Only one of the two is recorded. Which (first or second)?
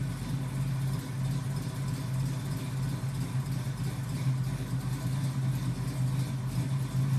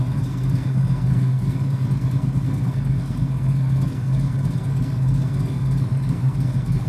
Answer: first